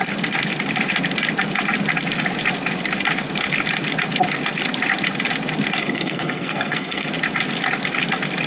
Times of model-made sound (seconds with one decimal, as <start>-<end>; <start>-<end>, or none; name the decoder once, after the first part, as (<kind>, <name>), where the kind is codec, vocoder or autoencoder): 5.8-7.1 (codec, SNAC)